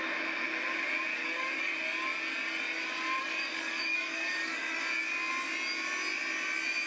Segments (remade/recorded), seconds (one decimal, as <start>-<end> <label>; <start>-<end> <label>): 0.0-1.1 recorded; 1.1-1.7 remade; 1.7-3.2 recorded; 3.2-4.8 remade; 4.8-6.9 recorded